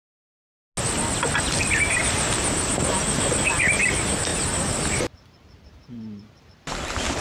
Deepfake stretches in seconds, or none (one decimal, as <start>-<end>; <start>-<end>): 2.0-3.0; 4.3-6.4

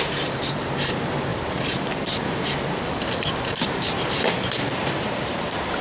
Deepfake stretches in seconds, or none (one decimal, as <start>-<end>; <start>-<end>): 0.0-5.8